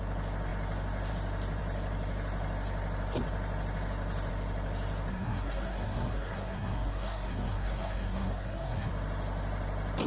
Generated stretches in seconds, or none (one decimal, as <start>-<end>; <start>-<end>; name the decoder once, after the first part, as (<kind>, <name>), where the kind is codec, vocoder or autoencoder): 5.1-8.9 (codec, SNAC)